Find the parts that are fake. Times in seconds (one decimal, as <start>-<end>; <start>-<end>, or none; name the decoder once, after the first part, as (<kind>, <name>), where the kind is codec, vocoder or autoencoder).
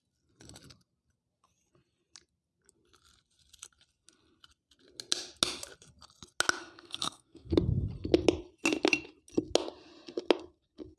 6.6-7.5 (codec, SNAC)